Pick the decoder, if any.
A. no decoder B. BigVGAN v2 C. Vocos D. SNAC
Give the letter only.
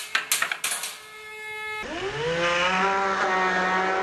A